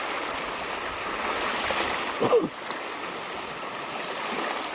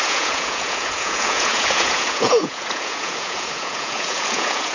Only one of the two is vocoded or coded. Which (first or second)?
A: second